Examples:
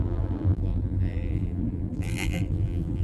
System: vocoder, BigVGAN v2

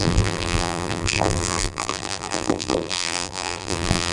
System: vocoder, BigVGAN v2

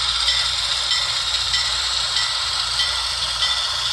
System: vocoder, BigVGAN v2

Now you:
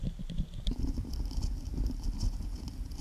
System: none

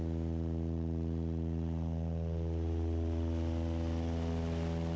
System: none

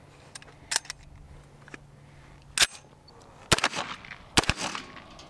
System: none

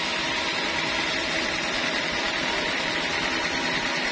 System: none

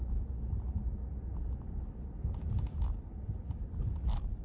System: none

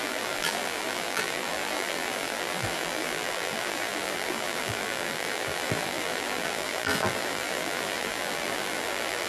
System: vocoder, BigVGAN v2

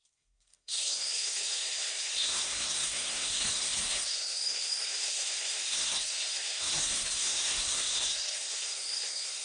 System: codec, SNAC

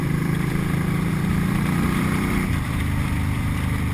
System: vocoder, BigVGAN v2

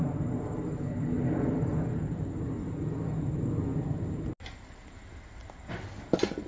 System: none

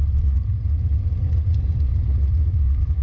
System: none